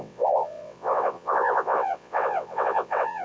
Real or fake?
fake